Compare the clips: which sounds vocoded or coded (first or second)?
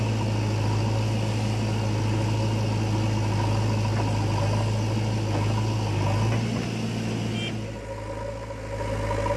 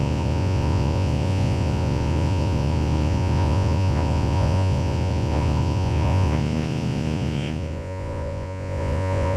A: second